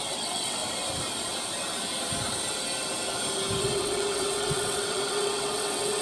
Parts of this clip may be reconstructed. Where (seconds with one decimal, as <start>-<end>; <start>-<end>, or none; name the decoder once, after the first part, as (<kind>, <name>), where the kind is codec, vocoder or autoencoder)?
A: 0.0-0.6 (vocoder, WaveNeXt); 3.6-6.0